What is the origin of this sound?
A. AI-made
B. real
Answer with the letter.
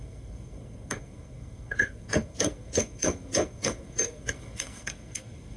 A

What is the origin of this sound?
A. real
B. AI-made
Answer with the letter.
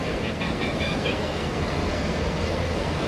B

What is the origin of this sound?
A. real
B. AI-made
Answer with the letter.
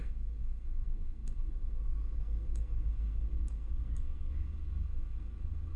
B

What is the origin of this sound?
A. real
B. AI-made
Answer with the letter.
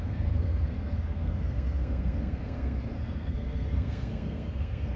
B